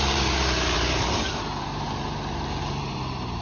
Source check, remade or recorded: remade